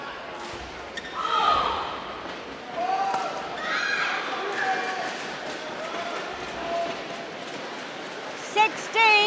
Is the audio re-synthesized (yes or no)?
no